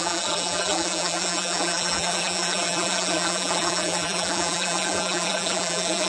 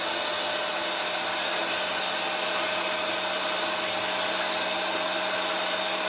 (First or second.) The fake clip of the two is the first